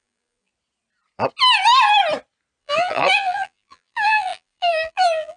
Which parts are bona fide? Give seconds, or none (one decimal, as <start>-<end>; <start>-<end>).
0.5-2.6